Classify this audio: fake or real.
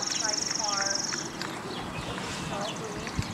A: real